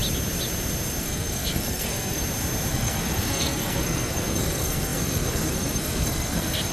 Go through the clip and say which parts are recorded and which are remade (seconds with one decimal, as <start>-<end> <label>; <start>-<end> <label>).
0.0-1.0 recorded; 1.0-2.2 remade; 2.2-2.7 recorded; 2.7-6.7 remade